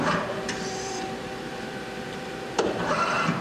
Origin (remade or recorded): remade